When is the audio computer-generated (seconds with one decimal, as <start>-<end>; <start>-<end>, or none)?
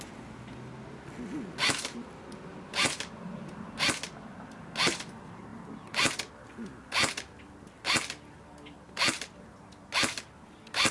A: none